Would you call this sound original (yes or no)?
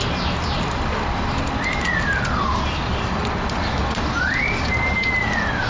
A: yes